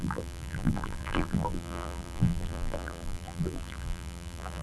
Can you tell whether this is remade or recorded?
remade